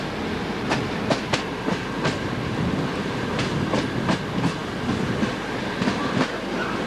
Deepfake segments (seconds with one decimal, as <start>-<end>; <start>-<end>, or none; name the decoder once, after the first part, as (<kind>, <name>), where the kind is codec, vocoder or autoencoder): none

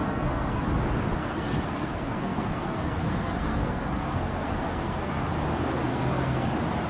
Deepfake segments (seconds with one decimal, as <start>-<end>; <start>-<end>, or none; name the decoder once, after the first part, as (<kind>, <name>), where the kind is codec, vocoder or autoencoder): 0.0-0.6 (codec, SNAC); 1.2-5.3; 5.9-6.5

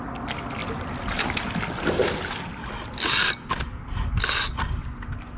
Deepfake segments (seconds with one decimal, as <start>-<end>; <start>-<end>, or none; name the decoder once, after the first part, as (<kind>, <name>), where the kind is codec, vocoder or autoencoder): none

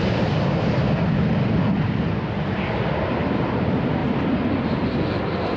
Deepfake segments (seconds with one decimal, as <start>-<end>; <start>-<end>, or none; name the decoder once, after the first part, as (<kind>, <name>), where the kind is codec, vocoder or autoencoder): none

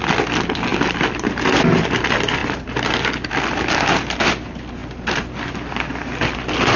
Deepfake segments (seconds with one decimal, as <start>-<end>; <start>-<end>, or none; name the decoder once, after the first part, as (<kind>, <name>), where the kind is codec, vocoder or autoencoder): 0.7-1.8 (vocoder, BigVGAN v2); 4.8-5.3

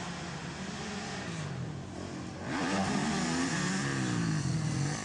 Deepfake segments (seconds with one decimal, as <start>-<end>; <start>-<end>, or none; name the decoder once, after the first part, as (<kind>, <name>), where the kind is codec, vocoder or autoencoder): none

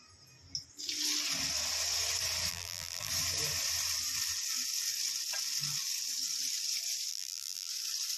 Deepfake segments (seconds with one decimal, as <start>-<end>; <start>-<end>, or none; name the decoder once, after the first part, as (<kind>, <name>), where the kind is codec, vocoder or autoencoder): 2.5-3.1 (vocoder, BigVGAN v2); 7.1-7.7